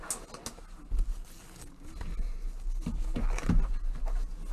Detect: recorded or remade recorded